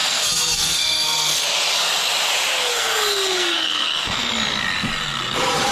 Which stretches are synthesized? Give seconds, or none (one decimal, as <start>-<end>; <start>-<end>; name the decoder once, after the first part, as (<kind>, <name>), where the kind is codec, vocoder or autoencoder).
0.0-1.4 (codec, SNAC); 2.7-4.3

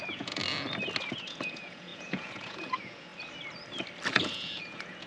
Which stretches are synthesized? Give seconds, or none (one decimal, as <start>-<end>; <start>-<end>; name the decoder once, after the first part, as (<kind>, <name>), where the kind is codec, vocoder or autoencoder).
0.0-0.4 (vocoder, Vocos); 1.0-3.1; 4.1-5.1

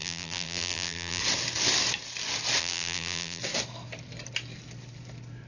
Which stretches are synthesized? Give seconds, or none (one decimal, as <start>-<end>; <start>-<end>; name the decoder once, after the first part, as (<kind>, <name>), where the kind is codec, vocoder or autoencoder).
0.0-1.2 (vocoder, BigVGAN v2); 2.6-3.4

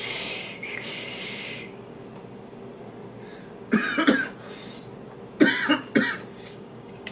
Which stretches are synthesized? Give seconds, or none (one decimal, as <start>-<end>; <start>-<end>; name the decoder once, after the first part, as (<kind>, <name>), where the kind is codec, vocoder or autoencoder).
0.0-2.0 (codec, DAC); 6.3-7.1

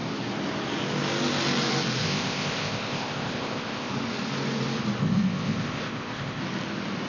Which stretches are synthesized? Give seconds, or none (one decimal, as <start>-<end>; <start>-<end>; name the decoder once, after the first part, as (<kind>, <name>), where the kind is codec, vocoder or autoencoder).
2.0-3.9 (codec, ZipCodec); 5.0-6.4

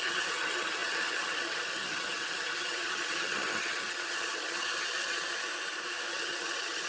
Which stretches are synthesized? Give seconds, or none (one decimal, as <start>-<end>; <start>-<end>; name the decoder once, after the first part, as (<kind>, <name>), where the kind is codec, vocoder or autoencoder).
0.0-5.5 (vocoder, HiFi-GAN); 6.1-6.9